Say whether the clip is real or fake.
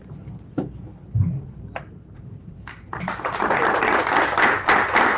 real